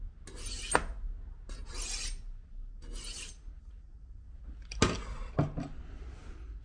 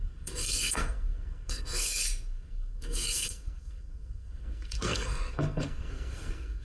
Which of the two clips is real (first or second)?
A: first